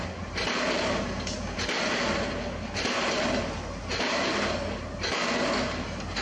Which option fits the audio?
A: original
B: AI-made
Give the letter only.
A